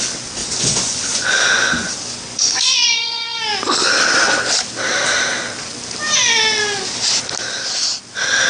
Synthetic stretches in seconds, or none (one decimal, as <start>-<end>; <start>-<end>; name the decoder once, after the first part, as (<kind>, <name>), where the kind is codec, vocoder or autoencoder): 0.4-3.4 (vocoder, Vocos)